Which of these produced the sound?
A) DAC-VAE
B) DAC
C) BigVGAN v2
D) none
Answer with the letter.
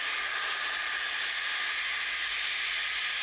D